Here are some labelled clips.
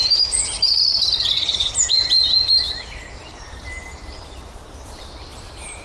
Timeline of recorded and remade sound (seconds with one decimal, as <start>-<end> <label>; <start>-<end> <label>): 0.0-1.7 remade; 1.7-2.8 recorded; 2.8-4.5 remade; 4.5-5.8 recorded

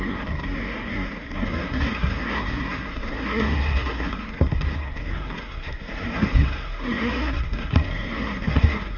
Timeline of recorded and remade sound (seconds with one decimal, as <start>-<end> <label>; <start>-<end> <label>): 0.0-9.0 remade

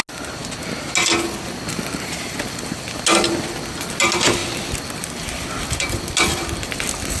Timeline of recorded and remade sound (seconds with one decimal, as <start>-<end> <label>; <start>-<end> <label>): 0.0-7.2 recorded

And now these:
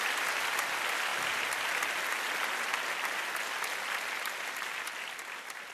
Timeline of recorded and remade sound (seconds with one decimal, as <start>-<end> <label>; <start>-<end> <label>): 0.0-5.7 recorded